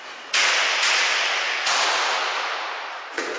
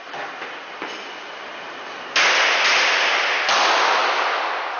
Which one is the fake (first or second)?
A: first